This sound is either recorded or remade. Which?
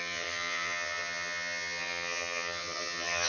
remade